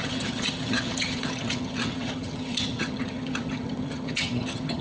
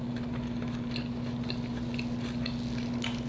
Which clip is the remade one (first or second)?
first